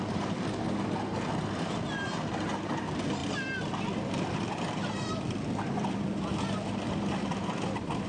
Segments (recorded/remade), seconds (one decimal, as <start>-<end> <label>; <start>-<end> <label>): 0.0-8.1 remade